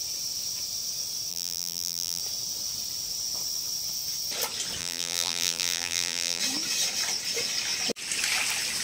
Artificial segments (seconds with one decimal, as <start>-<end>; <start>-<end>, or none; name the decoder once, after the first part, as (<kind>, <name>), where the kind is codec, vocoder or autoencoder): 1.3-2.2 (vocoder, BigVGAN v2); 4.8-6.4